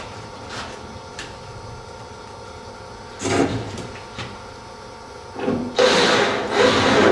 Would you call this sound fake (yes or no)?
no